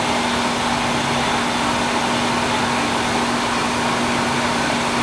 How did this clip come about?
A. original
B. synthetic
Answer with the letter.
A